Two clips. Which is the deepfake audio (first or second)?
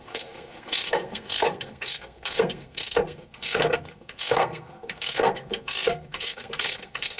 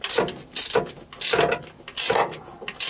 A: first